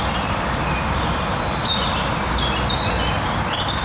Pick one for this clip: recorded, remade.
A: recorded